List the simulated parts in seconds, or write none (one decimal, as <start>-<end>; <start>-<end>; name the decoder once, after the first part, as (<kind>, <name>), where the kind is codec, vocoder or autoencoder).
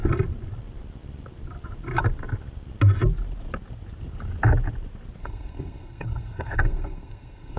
5.2-7.6 (codec, SNAC)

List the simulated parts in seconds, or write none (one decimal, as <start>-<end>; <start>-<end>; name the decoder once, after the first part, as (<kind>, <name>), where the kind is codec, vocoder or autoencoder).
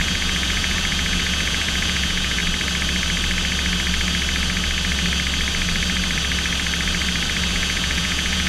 0.0-2.4 (vocoder, Vocos); 7.5-8.5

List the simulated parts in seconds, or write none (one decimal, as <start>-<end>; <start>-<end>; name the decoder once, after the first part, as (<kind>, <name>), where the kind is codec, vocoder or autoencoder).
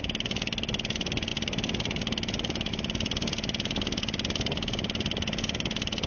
none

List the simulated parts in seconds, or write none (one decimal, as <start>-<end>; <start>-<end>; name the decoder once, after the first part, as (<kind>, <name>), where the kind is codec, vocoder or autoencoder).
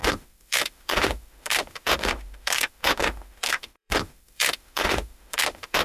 0.0-5.8 (autoencoder, DAC-VAE)